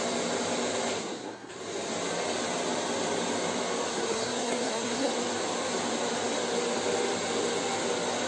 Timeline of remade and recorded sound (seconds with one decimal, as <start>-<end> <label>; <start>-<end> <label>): 0.0-1.0 recorded; 1.0-1.5 remade; 1.5-3.9 recorded; 3.9-5.1 remade; 5.1-8.3 recorded